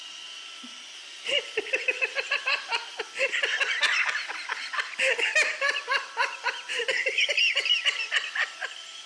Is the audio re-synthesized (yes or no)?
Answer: no